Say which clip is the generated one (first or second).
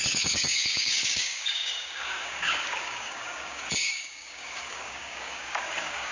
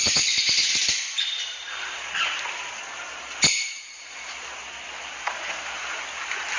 first